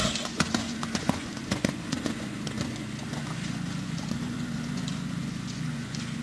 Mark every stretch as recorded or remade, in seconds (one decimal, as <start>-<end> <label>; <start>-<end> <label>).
0.0-6.2 remade